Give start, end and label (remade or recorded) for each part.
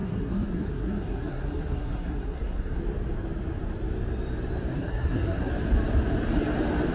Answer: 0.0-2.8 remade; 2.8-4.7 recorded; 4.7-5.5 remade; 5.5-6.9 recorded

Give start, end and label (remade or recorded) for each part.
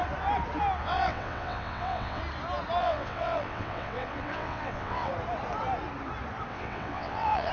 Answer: 0.0-0.8 recorded; 0.8-2.2 remade; 2.2-2.8 recorded; 2.8-5.1 remade; 5.1-6.5 recorded; 6.5-7.5 remade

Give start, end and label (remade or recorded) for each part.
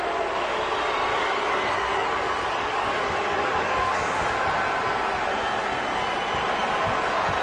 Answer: 0.0-1.1 recorded; 1.1-4.2 remade; 4.2-7.4 recorded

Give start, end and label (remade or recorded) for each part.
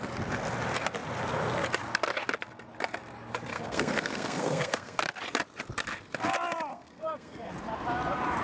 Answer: 0.0-3.5 recorded; 3.5-5.0 remade; 5.0-6.7 recorded; 6.7-7.5 remade; 7.5-8.4 recorded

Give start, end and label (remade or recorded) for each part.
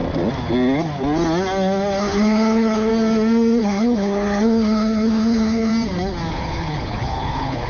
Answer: 0.0-2.0 recorded; 2.0-2.9 remade; 2.9-3.6 recorded; 3.6-5.7 remade; 5.7-6.3 recorded; 6.3-7.7 remade